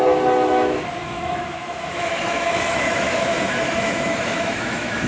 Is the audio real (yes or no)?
no